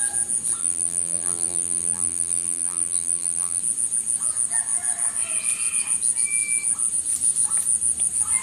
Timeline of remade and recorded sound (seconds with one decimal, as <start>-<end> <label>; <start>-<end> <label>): 0.0-0.6 recorded; 0.6-3.6 remade; 3.6-8.4 recorded